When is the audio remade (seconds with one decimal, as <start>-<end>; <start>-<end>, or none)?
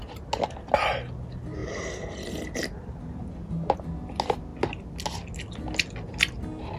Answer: 1.6-2.4